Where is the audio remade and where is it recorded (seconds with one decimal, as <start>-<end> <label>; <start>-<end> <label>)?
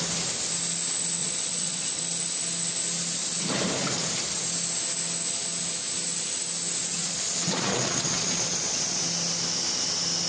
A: 0.0-1.2 recorded; 1.2-2.0 remade; 2.0-7.0 recorded; 7.0-9.0 remade; 9.0-10.3 recorded